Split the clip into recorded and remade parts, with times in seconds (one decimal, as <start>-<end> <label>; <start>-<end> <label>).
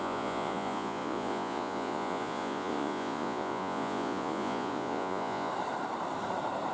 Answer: 0.0-5.5 remade; 5.5-6.7 recorded